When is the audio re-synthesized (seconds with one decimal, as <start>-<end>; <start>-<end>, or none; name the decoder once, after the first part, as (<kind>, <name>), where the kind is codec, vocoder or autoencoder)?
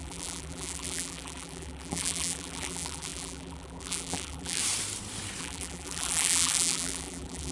0.0-4.6 (vocoder, BigVGAN v2); 5.4-7.5